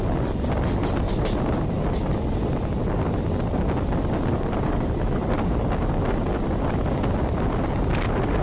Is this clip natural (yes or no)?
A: yes